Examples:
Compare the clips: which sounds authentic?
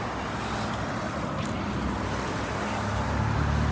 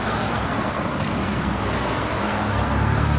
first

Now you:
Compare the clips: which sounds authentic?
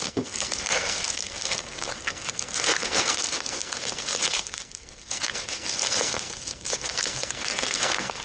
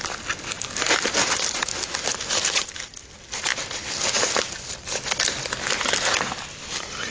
second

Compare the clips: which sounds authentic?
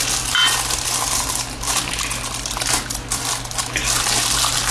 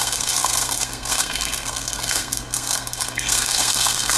first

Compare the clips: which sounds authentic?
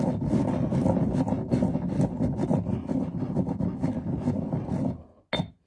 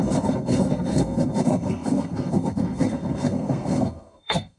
first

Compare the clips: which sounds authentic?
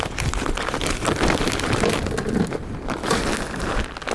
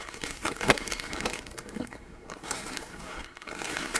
first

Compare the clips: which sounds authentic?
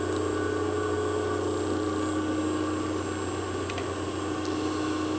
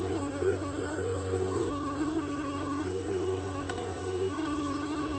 first